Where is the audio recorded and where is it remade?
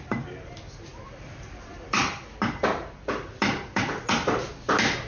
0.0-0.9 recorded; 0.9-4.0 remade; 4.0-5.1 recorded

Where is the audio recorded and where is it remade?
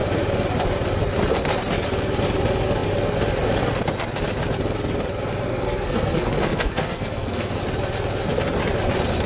0.0-5.5 recorded; 5.5-7.6 remade; 7.6-9.3 recorded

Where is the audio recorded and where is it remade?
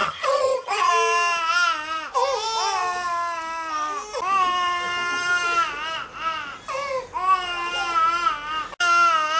0.0-0.9 remade; 0.9-9.4 recorded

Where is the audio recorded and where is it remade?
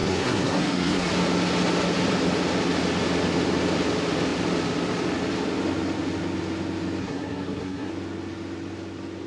0.0-1.1 remade; 1.1-7.0 recorded; 7.0-7.9 remade; 7.9-9.3 recorded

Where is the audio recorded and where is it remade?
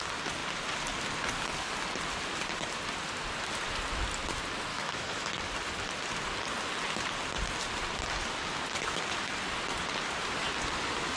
0.0-4.7 recorded; 4.7-5.3 remade; 5.3-11.2 recorded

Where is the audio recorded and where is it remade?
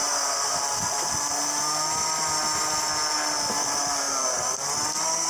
0.0-5.3 recorded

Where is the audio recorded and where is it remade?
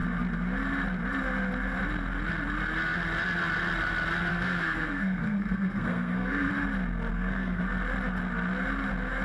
0.0-4.3 recorded; 4.3-6.5 remade; 6.5-7.1 recorded; 7.1-7.6 remade; 7.6-9.2 recorded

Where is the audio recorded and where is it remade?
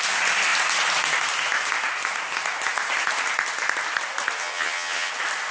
0.0-4.4 recorded; 4.4-5.1 remade; 5.1-5.5 recorded